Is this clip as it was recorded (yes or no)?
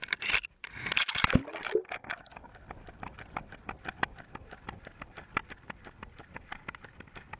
yes